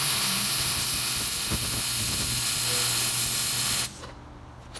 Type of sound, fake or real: real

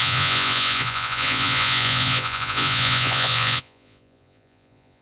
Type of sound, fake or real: fake